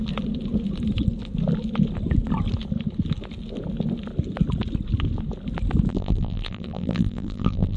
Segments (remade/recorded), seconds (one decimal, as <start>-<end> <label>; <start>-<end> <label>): 0.0-5.9 recorded; 5.9-7.8 remade